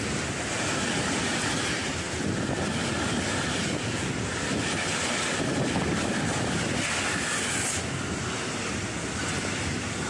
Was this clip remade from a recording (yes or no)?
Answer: no